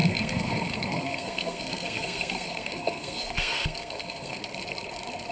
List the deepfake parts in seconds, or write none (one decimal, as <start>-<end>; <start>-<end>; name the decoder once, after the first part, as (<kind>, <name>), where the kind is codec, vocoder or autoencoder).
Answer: 0.0-4.4 (codec, SNAC)